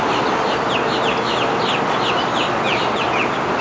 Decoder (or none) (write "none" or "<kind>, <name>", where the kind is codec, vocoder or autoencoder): none